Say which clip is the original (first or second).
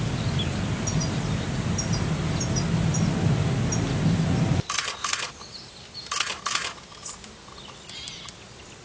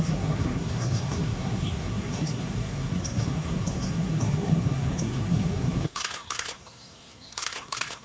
first